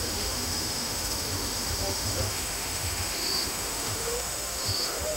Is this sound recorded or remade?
remade